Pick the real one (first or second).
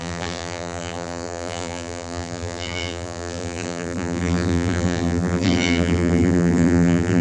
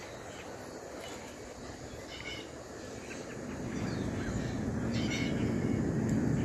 second